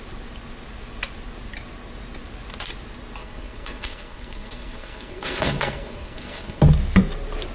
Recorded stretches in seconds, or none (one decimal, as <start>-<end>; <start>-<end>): 0.0-3.2; 6.6-7.5